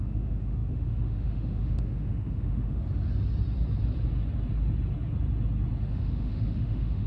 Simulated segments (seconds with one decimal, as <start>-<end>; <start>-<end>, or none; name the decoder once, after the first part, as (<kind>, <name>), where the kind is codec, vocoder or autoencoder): 0.0-2.8 (autoencoder, DAC-VAE); 5.9-7.1